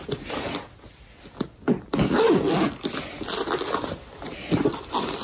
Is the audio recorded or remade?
recorded